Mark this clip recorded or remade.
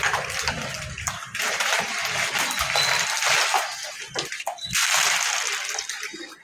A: recorded